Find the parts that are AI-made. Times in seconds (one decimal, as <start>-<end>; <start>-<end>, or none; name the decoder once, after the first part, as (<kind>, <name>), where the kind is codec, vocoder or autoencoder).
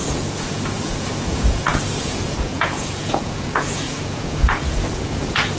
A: 0.0-5.6 (vocoder, Vocos)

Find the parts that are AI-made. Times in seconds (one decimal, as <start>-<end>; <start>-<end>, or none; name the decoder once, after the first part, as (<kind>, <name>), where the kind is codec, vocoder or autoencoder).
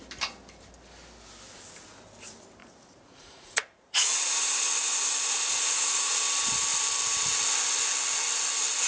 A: 2.6-6.2 (vocoder, Vocos)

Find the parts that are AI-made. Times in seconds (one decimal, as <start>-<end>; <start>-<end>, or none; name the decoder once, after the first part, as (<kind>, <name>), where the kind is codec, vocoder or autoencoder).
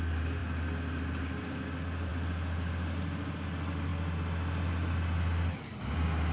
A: none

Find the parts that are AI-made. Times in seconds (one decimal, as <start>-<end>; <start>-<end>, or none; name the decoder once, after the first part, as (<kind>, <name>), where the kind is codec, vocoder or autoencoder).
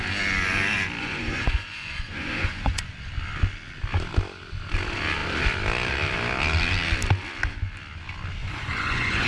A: 1.0-2.8 (vocoder, Vocos); 8.4-9.3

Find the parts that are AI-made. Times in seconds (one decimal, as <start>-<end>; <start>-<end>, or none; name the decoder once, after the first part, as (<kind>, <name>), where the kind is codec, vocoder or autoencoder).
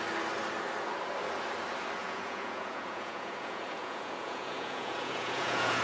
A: 2.0-5.8 (vocoder, Vocos)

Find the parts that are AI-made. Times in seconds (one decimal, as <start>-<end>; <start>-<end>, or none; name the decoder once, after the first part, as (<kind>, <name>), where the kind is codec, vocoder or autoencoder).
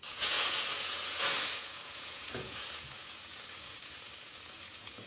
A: 0.0-5.1 (vocoder, Vocos)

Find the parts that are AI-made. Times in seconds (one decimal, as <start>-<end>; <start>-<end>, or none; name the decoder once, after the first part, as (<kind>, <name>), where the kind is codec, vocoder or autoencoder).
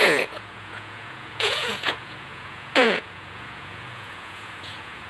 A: 0.0-5.1 (vocoder, Vocos)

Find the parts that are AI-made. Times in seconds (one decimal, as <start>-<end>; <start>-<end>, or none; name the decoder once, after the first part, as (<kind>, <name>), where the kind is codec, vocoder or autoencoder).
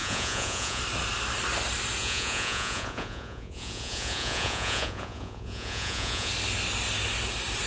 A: 0.0-0.8 (vocoder, Vocos); 2.0-6.3